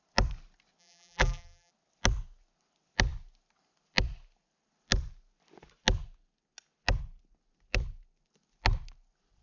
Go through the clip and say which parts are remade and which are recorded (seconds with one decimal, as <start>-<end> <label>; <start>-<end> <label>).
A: 0.0-0.8 recorded; 0.8-1.7 remade; 1.7-9.4 recorded